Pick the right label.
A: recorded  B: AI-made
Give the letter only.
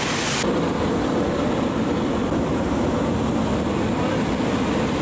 A